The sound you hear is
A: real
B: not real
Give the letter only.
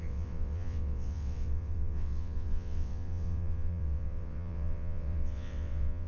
B